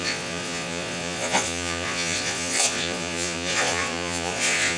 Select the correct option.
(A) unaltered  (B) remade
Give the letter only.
B